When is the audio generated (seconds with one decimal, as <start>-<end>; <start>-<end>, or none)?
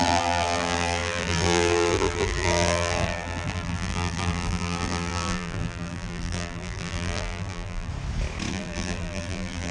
0.0-7.9; 8.5-9.7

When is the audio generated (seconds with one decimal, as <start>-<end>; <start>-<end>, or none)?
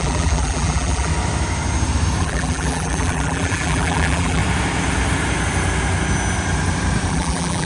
0.0-1.1; 2.2-4.4; 7.1-7.7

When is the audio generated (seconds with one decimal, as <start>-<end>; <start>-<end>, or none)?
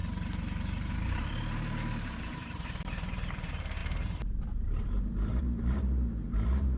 0.9-6.8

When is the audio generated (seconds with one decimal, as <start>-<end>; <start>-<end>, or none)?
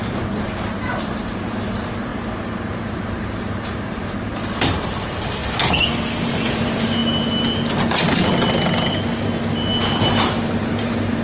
0.0-2.1; 2.9-5.4; 6.4-7.0; 10.1-11.2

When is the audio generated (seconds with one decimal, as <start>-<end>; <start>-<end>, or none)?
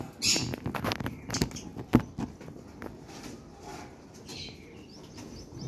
none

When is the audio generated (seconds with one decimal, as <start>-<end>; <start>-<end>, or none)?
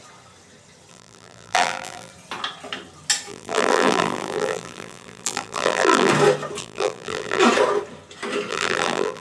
0.9-2.1; 3.3-6.1; 6.6-7.4; 8.5-9.2